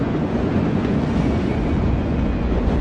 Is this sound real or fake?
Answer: fake